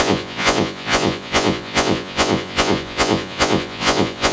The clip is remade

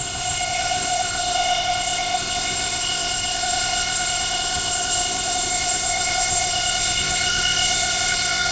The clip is remade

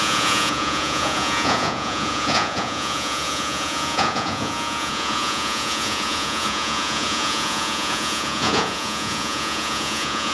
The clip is remade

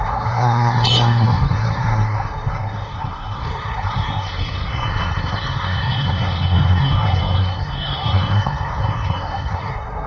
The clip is remade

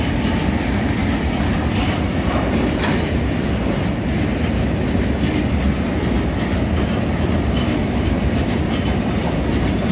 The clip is recorded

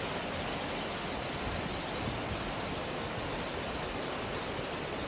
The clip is recorded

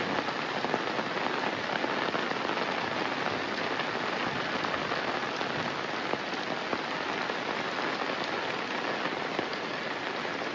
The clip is recorded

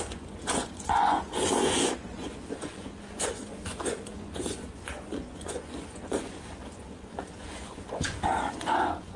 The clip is remade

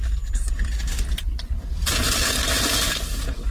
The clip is recorded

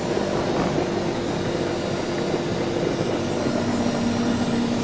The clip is recorded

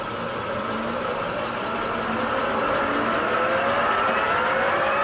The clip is recorded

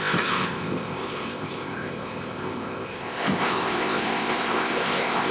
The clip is remade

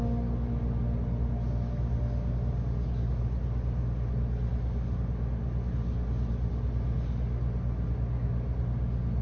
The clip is recorded